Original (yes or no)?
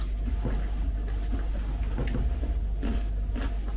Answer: yes